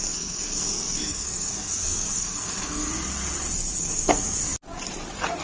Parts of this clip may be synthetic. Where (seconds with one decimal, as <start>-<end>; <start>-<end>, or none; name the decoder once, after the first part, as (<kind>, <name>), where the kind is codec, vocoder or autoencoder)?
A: 0.0-2.9 (codec, SNAC); 3.8-4.4